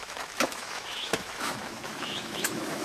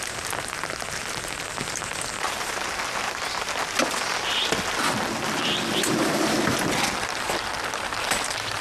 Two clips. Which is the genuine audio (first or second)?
second